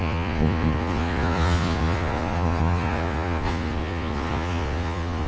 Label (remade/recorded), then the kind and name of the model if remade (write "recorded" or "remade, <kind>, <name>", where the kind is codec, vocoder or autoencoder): remade, vocoder, Vocos